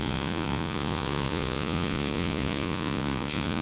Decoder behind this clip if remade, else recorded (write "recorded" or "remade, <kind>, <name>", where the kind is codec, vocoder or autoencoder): remade, vocoder, Vocos